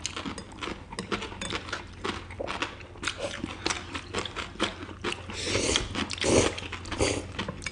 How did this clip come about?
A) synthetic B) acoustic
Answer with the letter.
B